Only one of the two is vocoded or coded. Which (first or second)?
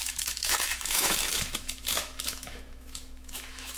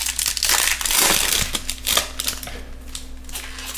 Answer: first